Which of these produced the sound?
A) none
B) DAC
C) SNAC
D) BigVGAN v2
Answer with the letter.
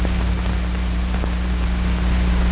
A